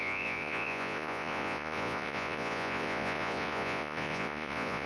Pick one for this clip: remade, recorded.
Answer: remade